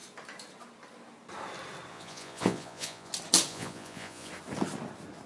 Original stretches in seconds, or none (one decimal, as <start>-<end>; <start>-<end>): 0.0-1.9; 3.1-3.5; 4.3-5.3